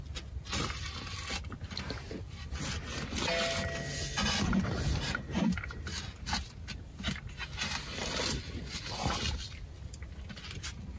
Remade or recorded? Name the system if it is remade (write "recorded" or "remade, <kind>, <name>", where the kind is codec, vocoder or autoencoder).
recorded